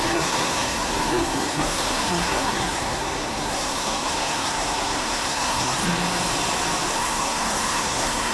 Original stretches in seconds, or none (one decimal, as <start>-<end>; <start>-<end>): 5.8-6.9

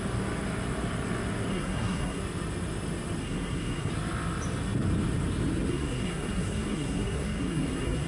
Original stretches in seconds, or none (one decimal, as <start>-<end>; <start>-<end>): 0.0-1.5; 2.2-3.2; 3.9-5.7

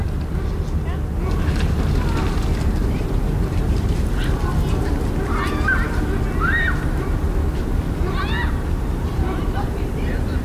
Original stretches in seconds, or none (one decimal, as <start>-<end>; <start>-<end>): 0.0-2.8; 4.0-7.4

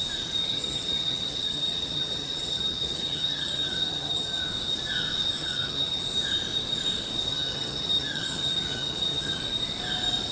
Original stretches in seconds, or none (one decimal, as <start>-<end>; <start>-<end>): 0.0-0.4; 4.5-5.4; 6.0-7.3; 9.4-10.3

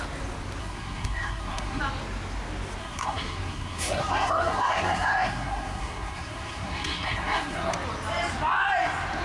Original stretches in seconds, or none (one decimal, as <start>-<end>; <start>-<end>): 0.0-0.6; 1.8-2.8; 7.7-9.2